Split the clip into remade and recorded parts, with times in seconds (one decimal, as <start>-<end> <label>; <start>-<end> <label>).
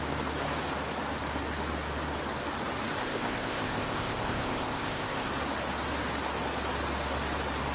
0.0-3.0 recorded; 3.0-5.3 remade; 5.3-7.7 recorded